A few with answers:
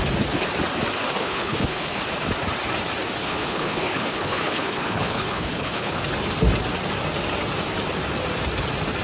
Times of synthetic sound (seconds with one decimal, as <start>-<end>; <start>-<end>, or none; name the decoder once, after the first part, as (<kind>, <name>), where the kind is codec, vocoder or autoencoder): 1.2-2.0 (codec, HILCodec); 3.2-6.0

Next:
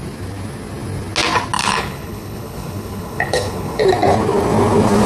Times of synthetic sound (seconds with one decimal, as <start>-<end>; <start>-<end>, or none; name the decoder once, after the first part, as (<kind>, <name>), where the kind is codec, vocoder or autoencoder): 1.6-3.8 (codec, HILCodec)

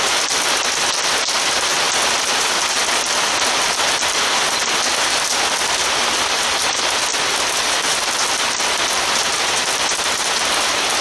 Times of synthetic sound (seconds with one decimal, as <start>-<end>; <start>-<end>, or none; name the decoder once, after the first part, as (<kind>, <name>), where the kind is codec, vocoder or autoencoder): none

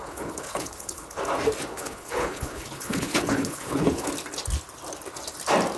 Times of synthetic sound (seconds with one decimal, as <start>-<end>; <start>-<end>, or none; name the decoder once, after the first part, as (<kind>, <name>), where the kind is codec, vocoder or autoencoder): 0.0-1.2 (codec, HILCodec); 1.7-4.1

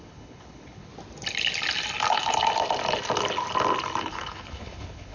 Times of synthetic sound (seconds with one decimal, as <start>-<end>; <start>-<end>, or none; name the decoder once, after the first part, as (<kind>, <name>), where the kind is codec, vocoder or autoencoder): 0.0-0.9 (codec, HILCodec); 4.0-5.1